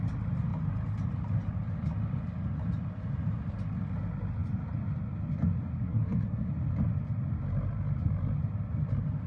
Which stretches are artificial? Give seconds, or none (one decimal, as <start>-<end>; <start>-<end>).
5.8-6.5